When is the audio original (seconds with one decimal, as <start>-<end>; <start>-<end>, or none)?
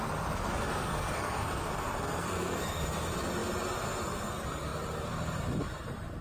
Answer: 0.0-0.7; 2.8-6.2